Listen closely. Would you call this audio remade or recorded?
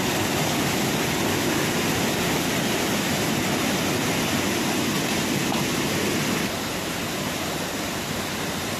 recorded